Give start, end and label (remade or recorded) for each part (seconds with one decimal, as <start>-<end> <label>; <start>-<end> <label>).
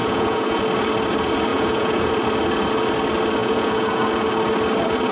0.0-0.6 remade; 0.6-1.5 recorded; 1.5-2.1 remade; 2.1-3.4 recorded; 3.4-4.1 remade; 4.1-5.1 recorded